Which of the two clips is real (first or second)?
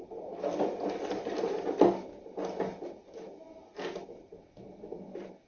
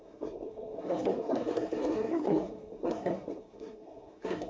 first